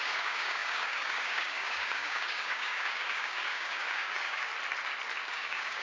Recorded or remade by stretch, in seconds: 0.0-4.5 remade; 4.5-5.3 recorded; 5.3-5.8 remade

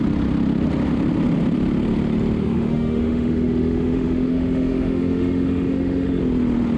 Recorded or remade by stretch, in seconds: 0.0-2.4 recorded; 2.4-6.2 remade; 6.2-6.8 recorded

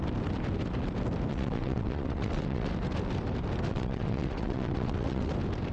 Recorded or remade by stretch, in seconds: 0.0-1.3 recorded; 1.3-2.7 remade; 2.7-3.7 recorded; 3.7-5.3 remade; 5.3-5.7 recorded

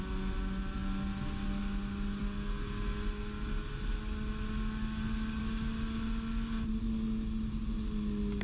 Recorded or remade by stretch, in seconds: 0.0-8.4 recorded

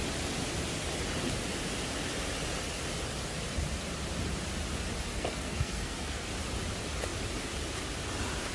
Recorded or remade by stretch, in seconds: 0.0-5.1 recorded; 5.1-6.3 remade; 6.3-8.5 recorded

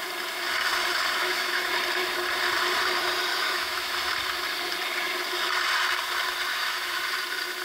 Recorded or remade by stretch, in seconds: 0.0-1.2 recorded; 1.2-1.7 remade; 1.7-3.3 recorded; 3.3-3.9 remade; 3.9-6.5 recorded; 6.5-7.0 remade; 7.0-7.6 recorded

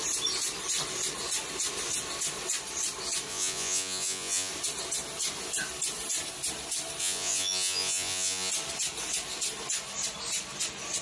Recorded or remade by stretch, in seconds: 0.0-3.3 recorded; 3.3-4.5 remade; 4.5-7.0 recorded; 7.0-8.5 remade; 8.5-11.0 recorded